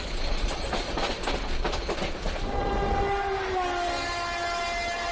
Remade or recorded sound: recorded